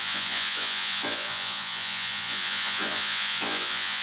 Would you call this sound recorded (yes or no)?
no